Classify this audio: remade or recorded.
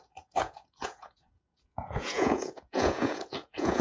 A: remade